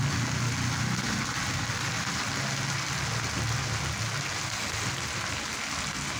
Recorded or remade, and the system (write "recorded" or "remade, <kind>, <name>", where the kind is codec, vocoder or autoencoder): recorded